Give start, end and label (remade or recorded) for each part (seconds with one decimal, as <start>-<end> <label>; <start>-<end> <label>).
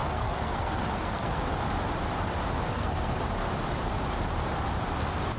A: 0.0-1.4 remade; 1.4-2.7 recorded; 2.7-3.2 remade; 3.2-5.4 recorded